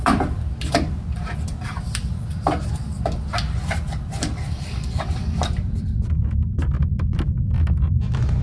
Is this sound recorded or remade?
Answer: remade